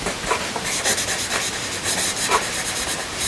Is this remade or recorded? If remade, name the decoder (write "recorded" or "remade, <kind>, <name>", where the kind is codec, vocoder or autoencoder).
remade, vocoder, BigVGAN v2